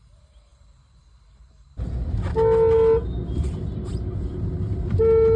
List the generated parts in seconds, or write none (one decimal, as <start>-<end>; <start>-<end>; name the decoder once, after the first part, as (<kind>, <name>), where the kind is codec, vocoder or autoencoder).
none